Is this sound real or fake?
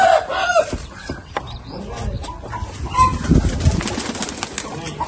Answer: real